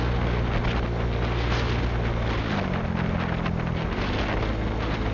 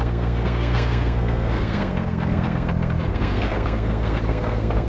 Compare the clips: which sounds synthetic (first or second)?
second